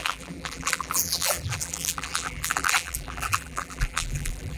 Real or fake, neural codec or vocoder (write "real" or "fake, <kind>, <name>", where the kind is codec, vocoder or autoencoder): fake, vocoder, BigVGAN v2